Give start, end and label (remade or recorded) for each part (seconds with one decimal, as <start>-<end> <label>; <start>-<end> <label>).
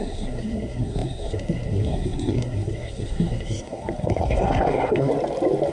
0.0-5.1 remade; 5.1-5.7 recorded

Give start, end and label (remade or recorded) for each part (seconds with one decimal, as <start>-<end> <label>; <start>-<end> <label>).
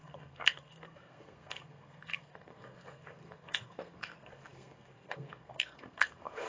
0.0-6.5 remade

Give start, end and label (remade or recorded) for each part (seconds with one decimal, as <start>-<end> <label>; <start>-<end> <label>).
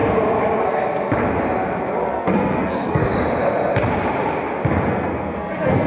0.0-2.1 recorded; 2.1-3.1 remade; 3.1-4.9 recorded; 4.9-5.9 remade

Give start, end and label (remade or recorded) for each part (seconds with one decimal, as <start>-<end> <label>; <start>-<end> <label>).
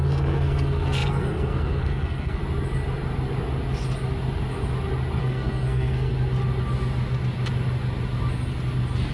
0.0-2.4 remade; 2.4-5.2 recorded; 5.2-6.1 remade; 6.1-9.1 recorded